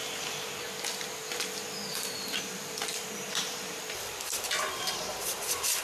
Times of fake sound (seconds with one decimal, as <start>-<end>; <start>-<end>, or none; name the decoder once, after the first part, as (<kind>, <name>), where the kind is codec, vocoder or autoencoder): 2.4-5.8 (vocoder, BigVGAN v2)